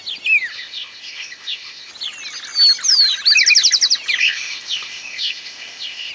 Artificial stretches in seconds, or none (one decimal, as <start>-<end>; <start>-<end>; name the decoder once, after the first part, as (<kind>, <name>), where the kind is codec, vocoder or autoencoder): 0.5-1.9 (codec, ZipCodec); 4.2-6.1